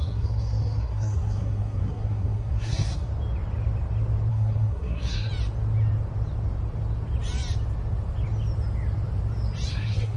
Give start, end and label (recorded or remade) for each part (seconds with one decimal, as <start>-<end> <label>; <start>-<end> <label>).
0.0-3.1 remade; 3.1-4.3 recorded; 4.3-5.3 remade; 5.3-9.7 recorded; 9.7-10.2 remade